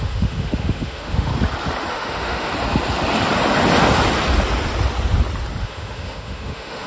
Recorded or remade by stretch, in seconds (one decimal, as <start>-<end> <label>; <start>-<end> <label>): 0.0-1.3 remade; 1.3-1.9 recorded; 1.9-2.5 remade; 2.5-5.6 recorded; 5.6-6.9 remade